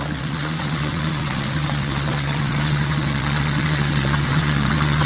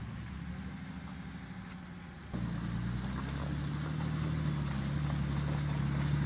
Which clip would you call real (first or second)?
second